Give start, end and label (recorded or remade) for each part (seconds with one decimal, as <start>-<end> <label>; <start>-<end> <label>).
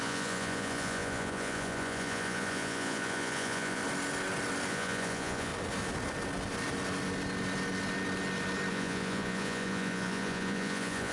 0.0-3.8 remade; 3.8-4.7 recorded; 4.7-5.5 remade; 5.5-8.7 recorded; 8.7-11.1 remade